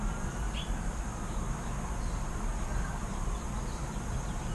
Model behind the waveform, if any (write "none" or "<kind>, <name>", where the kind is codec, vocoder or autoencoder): none